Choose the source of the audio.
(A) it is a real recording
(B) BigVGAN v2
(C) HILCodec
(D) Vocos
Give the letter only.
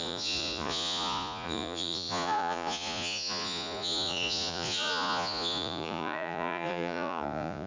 D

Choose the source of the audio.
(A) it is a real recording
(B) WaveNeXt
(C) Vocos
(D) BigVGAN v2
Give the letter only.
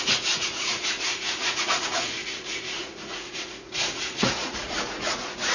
C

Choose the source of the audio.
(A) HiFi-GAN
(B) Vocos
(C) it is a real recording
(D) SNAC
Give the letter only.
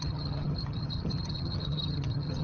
A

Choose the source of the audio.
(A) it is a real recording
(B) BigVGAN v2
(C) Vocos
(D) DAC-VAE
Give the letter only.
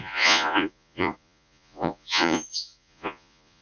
C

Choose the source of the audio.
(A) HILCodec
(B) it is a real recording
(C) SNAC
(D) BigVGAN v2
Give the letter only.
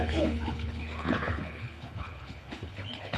A